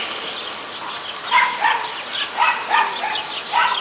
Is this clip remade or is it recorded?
recorded